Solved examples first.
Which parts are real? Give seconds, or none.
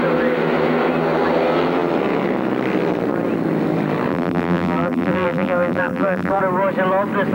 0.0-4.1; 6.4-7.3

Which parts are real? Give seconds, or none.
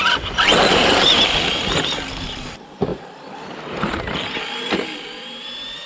0.0-0.5; 1.1-5.9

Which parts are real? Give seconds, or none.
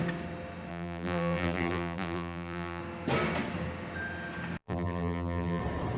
0.0-0.7; 2.8-4.6; 5.6-6.0